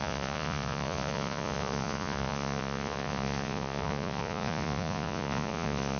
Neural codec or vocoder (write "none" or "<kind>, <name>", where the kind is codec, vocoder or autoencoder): vocoder, Vocos